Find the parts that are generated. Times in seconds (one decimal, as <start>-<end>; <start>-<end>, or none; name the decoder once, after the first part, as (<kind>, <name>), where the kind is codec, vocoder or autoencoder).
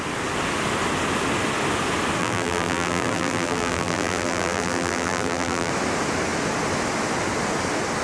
2.2-5.7 (vocoder, BigVGAN v2)